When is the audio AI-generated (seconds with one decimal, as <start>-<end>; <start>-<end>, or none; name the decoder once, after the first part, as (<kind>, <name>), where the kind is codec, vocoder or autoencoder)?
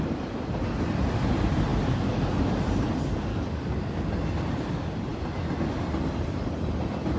3.3-4.1 (codec, DAC)